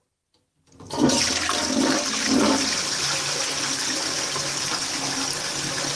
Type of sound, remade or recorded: recorded